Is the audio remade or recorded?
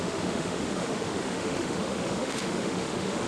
remade